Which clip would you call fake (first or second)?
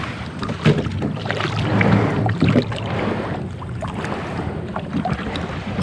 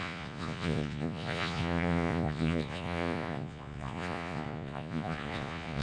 second